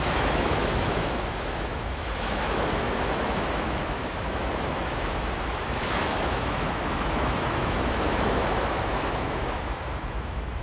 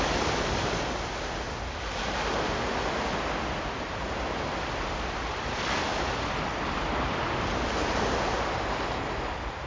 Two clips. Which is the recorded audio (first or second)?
second